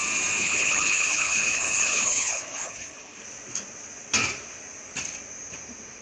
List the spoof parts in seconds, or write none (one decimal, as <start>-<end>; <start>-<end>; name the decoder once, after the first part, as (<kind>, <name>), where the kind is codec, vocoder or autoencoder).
0.4-3.2 (codec, HILCodec)